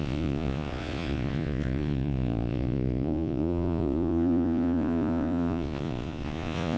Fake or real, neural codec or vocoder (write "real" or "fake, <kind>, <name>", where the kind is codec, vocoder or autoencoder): fake, vocoder, Vocos